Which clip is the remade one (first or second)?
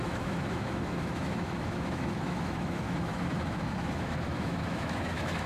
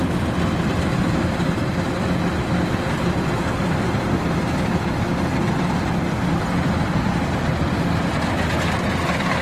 first